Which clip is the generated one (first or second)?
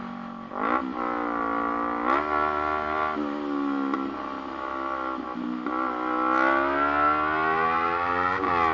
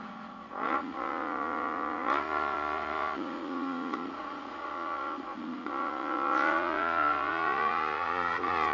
second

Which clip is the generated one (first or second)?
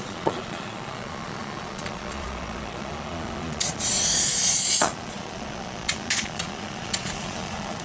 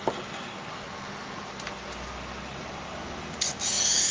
first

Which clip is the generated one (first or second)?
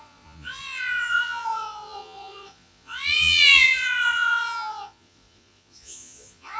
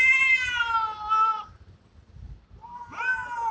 first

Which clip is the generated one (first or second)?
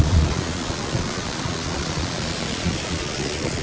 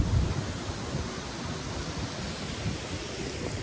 first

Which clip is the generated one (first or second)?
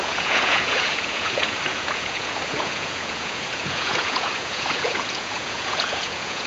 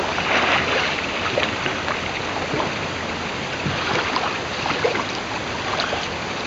first